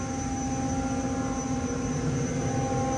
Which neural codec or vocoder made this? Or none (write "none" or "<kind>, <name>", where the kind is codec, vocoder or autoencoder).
none